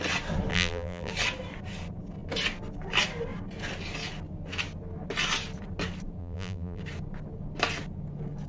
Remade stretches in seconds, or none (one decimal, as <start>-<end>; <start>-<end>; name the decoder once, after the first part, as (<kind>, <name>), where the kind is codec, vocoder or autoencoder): 0.5-1.1 (vocoder, BigVGAN v2); 6.2-6.8